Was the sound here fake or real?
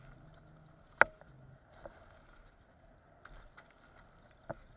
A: real